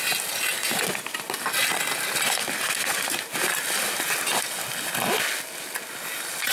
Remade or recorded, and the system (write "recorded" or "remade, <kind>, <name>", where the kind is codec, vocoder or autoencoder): recorded